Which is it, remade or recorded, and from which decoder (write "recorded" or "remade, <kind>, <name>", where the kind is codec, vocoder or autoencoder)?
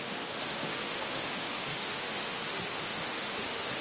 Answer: remade, autoencoder, DAC-VAE